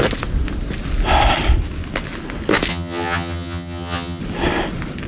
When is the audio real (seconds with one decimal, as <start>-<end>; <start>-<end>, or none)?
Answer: 0.0-2.7; 4.2-5.1